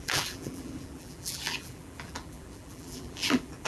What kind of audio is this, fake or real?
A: fake